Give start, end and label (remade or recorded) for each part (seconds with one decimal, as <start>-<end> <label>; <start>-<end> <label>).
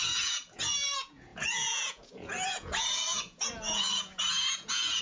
0.0-5.0 remade